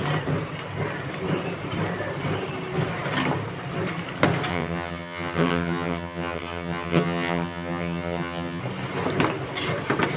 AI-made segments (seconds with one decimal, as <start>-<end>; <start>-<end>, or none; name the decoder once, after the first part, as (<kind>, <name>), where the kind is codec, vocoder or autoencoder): 4.5-8.6 (vocoder, HiFi-GAN)